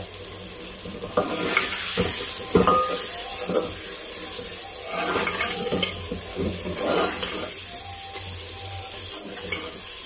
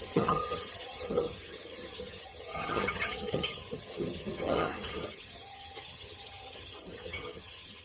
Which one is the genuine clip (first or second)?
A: first